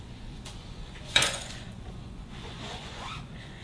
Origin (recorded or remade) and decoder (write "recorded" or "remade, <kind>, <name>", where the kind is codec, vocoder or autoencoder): remade, vocoder, Vocos